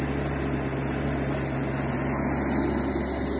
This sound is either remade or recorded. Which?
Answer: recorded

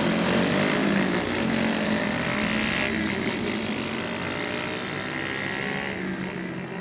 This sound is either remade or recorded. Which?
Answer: recorded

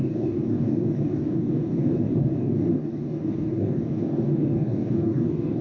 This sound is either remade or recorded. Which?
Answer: remade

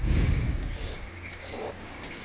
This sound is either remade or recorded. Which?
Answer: remade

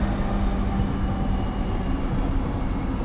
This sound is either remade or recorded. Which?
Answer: recorded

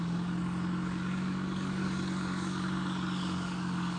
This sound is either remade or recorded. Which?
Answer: remade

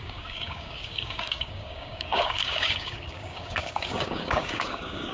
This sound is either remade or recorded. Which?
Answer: remade